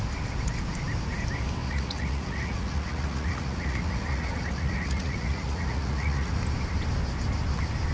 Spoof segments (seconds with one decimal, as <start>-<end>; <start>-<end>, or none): 1.6-6.3